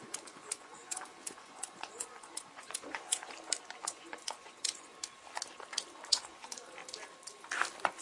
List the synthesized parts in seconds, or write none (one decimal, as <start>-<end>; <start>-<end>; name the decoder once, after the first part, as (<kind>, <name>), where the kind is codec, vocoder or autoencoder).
0.0-3.2 (vocoder, Vocos); 3.8-4.9; 6.1-6.8